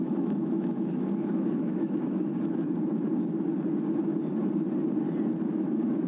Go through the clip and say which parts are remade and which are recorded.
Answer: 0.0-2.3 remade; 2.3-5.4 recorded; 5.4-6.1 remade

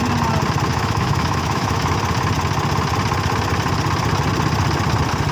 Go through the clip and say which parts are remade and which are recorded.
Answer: 0.0-0.7 recorded; 0.7-2.0 remade; 2.0-5.3 recorded

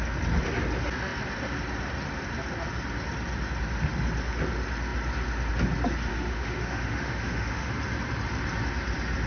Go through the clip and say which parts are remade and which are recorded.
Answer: 0.0-6.1 recorded; 6.1-7.7 remade; 7.7-9.3 recorded